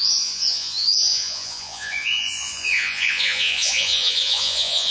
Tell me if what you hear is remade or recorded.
remade